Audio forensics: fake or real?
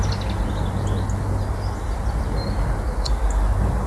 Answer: real